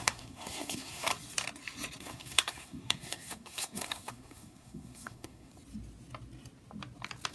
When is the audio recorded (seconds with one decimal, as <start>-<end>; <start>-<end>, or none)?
1.1-2.0; 5.5-7.3